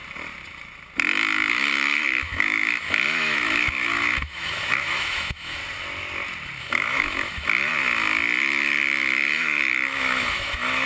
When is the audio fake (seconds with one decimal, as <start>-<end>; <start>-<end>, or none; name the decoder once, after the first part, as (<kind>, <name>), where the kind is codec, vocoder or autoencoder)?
1.5-5.6 (autoencoder, DAC-VAE); 6.6-7.7; 8.4-10.9